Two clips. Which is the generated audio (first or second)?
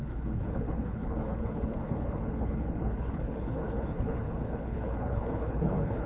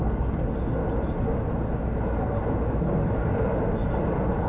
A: first